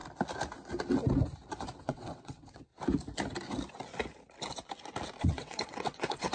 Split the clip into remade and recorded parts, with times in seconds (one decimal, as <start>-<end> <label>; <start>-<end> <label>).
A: 0.0-1.8 recorded; 1.8-2.7 remade; 2.7-5.2 recorded; 5.2-6.3 remade